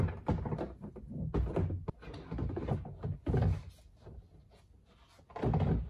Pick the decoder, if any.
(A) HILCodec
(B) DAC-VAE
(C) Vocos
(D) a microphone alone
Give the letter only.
D